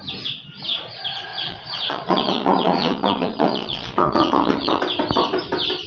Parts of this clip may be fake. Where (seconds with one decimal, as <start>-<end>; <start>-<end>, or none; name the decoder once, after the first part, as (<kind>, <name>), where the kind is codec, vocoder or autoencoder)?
1.3-4.8 (vocoder, Vocos)